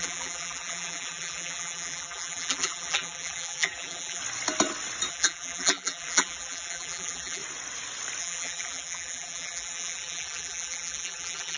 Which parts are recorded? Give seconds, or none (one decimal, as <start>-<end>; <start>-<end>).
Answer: 4.2-5.1; 7.4-8.2